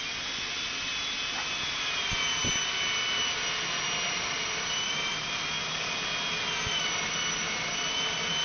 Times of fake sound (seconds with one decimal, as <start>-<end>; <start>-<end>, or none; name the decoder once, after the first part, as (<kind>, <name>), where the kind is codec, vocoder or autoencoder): none